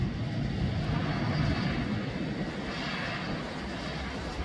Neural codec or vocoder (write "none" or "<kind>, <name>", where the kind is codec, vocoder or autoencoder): none